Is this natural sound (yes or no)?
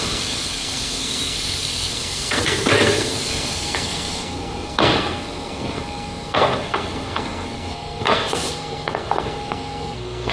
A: no